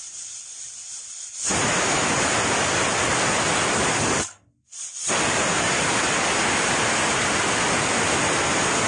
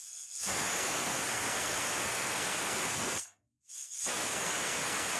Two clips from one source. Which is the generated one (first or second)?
second